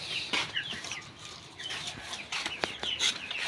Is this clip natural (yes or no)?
yes